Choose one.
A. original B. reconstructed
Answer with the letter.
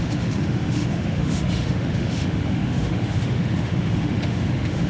B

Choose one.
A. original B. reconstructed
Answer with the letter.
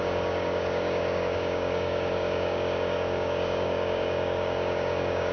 B